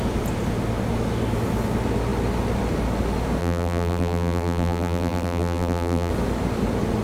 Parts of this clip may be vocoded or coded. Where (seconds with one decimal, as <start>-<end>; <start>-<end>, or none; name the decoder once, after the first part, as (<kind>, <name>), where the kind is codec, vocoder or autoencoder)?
3.4-6.1 (vocoder, BigVGAN v2)